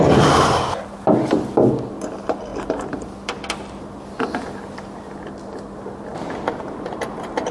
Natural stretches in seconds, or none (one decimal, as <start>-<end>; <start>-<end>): 0.0-2.5; 3.1-7.5